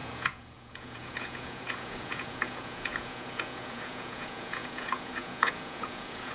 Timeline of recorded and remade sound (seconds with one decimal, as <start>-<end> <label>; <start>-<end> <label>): 0.0-6.3 remade